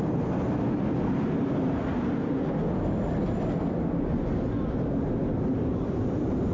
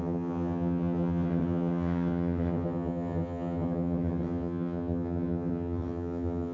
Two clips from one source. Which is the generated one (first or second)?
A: second